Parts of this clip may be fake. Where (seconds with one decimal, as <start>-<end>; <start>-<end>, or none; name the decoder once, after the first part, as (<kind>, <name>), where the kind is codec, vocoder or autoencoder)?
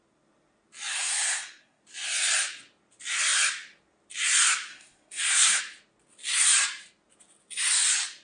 0.9-1.8 (codec, SNAC); 4.7-5.6